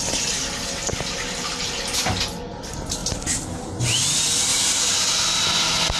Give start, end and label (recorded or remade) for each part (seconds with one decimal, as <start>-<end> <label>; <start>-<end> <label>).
0.0-0.8 recorded; 0.8-1.6 remade; 1.6-3.0 recorded; 3.0-3.8 remade; 3.8-4.5 recorded; 4.5-6.0 remade

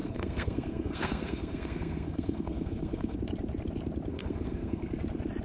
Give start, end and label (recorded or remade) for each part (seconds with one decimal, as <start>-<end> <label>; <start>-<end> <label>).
0.0-3.2 remade; 3.2-4.1 recorded; 4.1-4.9 remade; 4.9-5.4 recorded

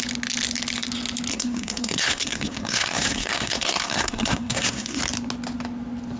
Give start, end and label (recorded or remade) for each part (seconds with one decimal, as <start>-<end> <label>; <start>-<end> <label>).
0.0-1.3 recorded; 1.3-5.0 remade; 5.0-6.2 recorded

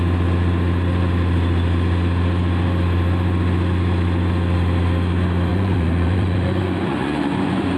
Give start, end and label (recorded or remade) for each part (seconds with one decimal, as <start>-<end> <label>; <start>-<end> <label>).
0.0-5.5 recorded; 5.5-7.8 remade

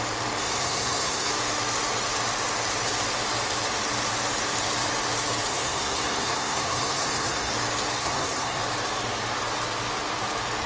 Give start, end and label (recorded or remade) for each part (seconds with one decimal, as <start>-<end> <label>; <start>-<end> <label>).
0.0-0.4 recorded; 0.4-1.3 remade; 1.3-5.5 recorded; 5.5-7.5 remade; 7.5-8.0 recorded; 8.0-8.6 remade; 8.6-10.7 recorded

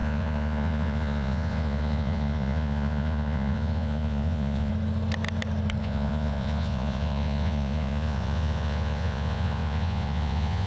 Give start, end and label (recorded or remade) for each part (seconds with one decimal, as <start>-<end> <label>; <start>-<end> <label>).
0.0-4.7 remade; 4.7-5.8 recorded; 5.8-10.7 remade

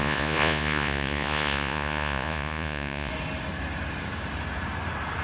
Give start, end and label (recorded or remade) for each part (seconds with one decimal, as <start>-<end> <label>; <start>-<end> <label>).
0.0-3.1 remade; 3.1-5.2 recorded